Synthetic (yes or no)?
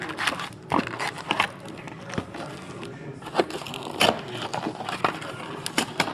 no